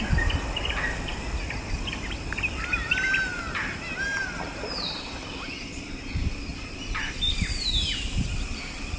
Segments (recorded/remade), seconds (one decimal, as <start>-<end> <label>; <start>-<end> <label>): 0.0-9.0 recorded